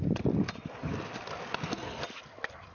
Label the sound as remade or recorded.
recorded